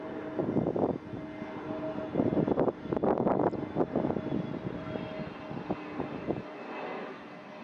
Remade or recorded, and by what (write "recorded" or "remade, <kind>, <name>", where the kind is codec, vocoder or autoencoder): recorded